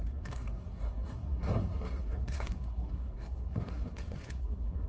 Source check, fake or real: fake